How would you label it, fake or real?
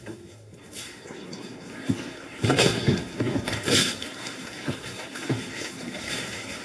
fake